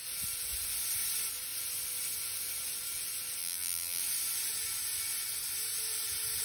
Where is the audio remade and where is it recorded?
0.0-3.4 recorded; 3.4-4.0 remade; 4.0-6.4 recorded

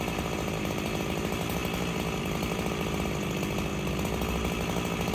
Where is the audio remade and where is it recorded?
0.0-1.6 remade; 1.6-2.2 recorded; 2.2-3.7 remade; 3.7-5.1 recorded

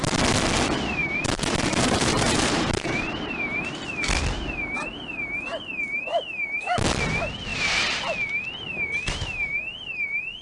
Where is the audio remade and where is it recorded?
0.0-1.0 recorded; 1.0-3.6 remade; 3.6-7.5 recorded; 7.5-8.0 remade; 8.0-10.4 recorded

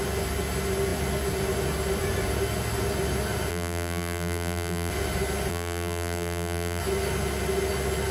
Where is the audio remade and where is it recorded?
0.0-3.5 recorded; 3.5-4.9 remade; 4.9-5.5 recorded; 5.5-6.8 remade; 6.8-8.1 recorded

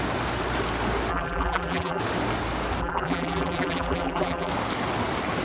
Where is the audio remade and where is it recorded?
0.0-1.1 recorded; 1.1-2.0 remade; 2.0-2.8 recorded; 2.8-4.5 remade; 4.5-5.4 recorded

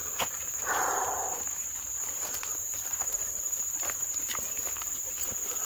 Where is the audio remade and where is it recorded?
0.0-3.4 remade; 3.4-5.6 recorded

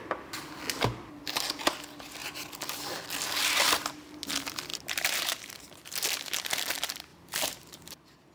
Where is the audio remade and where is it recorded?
0.0-4.7 recorded; 4.7-5.5 remade; 5.5-7.1 recorded; 7.1-8.3 remade

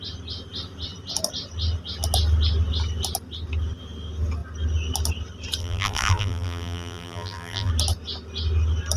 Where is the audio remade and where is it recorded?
0.0-5.6 recorded; 5.6-7.7 remade; 7.7-9.0 recorded